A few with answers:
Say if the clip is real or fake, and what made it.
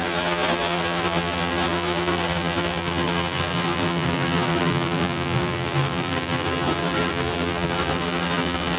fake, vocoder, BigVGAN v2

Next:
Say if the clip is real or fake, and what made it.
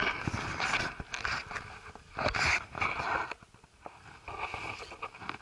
real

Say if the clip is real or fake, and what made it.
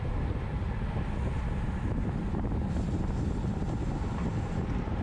real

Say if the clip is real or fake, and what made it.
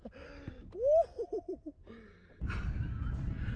real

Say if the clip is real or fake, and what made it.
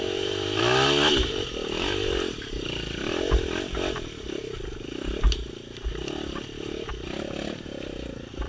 fake, vocoder, BigVGAN v2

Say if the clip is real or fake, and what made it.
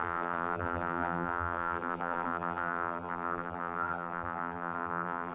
fake, vocoder, BigVGAN v2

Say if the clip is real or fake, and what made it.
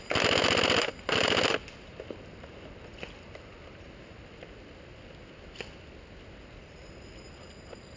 real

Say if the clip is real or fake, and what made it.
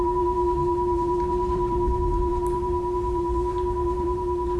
fake, vocoder, BigVGAN v2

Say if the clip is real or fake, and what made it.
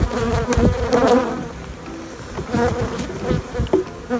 real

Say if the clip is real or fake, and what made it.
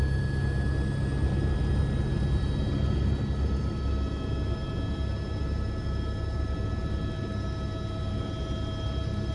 real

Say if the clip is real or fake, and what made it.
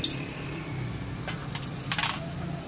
real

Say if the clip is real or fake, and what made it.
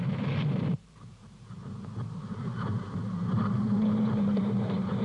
fake, vocoder, BigVGAN v2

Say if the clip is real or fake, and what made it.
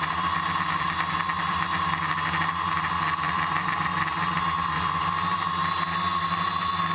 fake, vocoder, BigVGAN v2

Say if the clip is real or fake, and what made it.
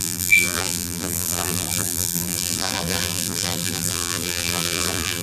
fake, vocoder, BigVGAN v2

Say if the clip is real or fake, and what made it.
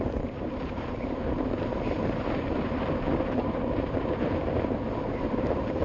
fake, vocoder, BigVGAN v2